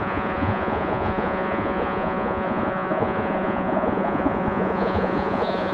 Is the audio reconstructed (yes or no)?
yes